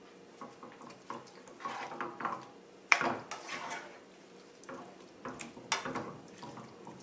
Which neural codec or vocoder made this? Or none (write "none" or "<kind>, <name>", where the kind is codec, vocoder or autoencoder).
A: none